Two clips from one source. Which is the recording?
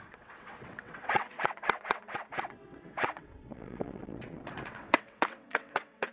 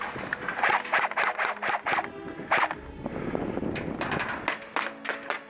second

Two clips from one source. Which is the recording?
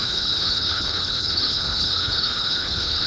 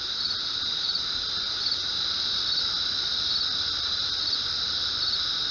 second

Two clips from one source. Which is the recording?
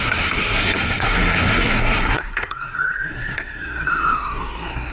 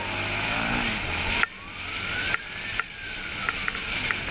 second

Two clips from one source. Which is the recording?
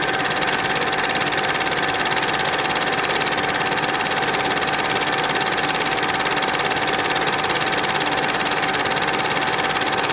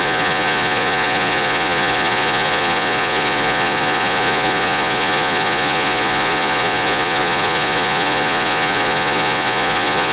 first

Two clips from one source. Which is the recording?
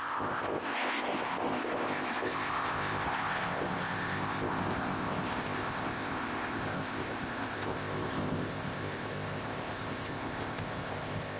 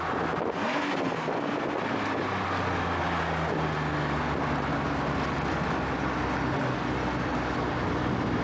second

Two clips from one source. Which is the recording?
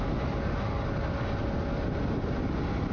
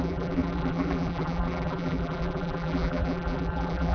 first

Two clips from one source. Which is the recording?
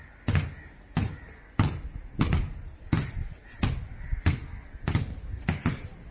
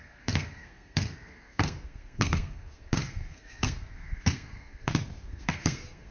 first